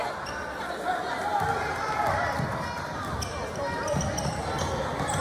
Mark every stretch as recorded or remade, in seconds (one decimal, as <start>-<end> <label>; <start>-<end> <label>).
0.0-5.2 recorded